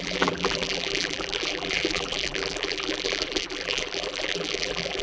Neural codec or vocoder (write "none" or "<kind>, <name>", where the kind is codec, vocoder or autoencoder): vocoder, BigVGAN v2